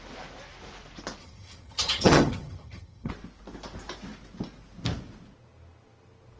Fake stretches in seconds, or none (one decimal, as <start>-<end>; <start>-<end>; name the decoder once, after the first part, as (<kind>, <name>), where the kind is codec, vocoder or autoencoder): 1.2-3.1 (vocoder, HiFi-GAN)